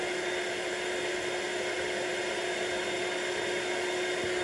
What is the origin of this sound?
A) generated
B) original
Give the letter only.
B